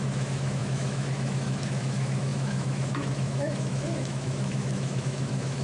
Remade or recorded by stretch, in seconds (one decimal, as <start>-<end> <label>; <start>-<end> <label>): 0.0-5.6 remade